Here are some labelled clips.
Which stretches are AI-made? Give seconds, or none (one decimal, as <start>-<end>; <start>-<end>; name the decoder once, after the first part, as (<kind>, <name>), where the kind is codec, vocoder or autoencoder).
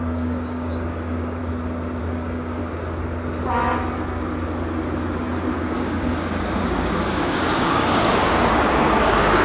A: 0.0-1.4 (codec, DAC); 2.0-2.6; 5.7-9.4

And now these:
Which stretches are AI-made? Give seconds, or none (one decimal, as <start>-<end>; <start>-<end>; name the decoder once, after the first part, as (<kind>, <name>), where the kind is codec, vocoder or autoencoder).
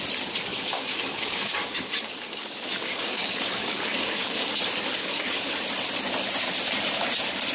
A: 0.5-4.6 (codec, DAC); 5.0-5.6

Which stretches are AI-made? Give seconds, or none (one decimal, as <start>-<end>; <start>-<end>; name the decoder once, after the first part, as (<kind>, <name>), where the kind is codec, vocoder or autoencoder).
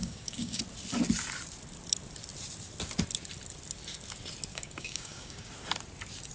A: 0.0-0.6 (codec, DAC); 4.5-5.5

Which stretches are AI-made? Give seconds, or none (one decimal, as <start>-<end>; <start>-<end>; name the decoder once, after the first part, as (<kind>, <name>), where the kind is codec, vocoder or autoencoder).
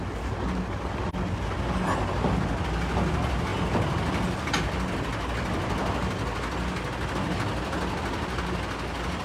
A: none